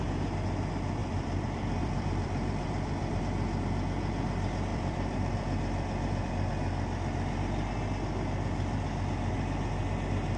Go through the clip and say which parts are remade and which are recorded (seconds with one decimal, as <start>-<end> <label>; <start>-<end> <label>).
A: 0.0-1.0 recorded; 1.0-3.2 remade; 3.2-4.7 recorded; 4.7-6.3 remade; 6.3-10.4 recorded